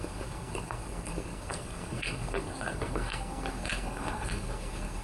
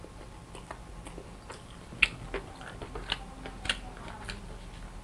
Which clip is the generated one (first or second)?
first